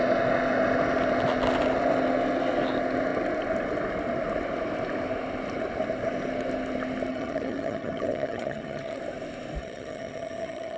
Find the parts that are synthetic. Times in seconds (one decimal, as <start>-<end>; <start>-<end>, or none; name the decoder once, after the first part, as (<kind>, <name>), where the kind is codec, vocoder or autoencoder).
7.1-9.0 (vocoder, HiFi-GAN); 9.6-10.8

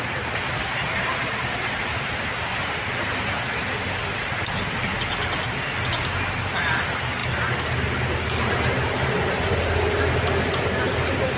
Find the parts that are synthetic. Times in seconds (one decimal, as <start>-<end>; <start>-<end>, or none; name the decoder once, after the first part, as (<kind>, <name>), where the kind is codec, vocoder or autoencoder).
none

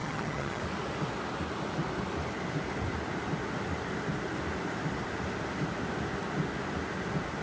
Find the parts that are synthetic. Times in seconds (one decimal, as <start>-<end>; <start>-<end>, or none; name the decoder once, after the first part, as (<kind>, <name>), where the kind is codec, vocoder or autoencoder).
0.0-0.6 (vocoder, HiFi-GAN)

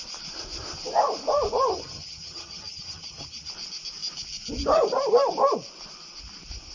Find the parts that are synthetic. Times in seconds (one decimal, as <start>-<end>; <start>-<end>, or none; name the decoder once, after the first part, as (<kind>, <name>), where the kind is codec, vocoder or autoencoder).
1.7-3.5 (vocoder, HiFi-GAN)

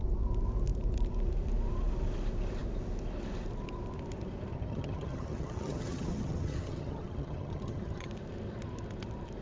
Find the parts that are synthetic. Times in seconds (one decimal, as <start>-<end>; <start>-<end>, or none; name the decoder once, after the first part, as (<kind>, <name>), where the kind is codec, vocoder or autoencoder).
4.5-8.1 (vocoder, HiFi-GAN)

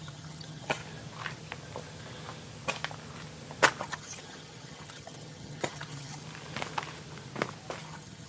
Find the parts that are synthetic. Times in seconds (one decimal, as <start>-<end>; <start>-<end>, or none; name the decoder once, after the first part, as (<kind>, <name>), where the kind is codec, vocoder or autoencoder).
0.0-0.8 (vocoder, HiFi-GAN); 3.8-6.2; 7.8-8.3

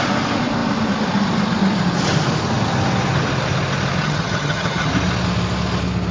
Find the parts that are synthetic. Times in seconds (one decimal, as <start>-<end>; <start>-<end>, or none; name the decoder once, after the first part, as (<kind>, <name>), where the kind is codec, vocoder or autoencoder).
4.0-4.9 (vocoder, HiFi-GAN)